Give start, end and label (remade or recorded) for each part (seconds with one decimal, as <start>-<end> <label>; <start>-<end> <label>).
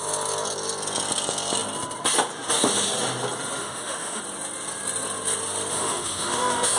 0.0-3.6 recorded; 3.6-4.2 remade; 4.2-5.7 recorded; 5.7-6.8 remade